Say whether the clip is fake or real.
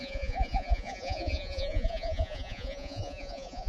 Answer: fake